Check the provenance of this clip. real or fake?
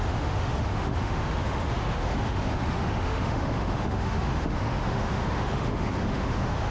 fake